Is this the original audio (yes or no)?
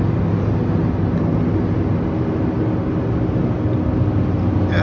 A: yes